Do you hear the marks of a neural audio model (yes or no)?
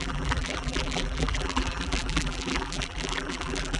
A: yes